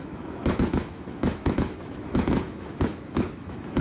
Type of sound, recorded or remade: remade